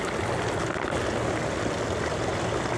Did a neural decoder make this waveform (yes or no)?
no